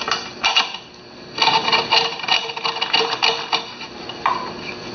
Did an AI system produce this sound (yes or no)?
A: no